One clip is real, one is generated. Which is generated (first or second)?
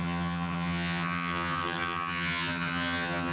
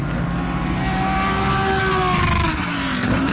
first